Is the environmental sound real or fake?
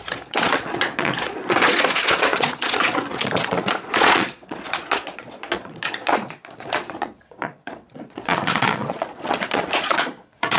fake